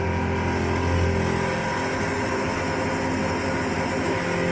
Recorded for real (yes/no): yes